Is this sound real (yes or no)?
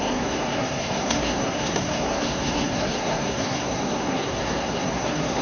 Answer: no